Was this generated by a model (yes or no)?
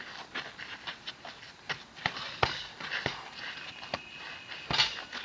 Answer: no